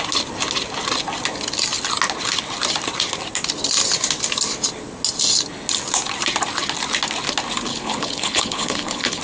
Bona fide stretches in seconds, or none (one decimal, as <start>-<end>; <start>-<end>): 0.0-7.7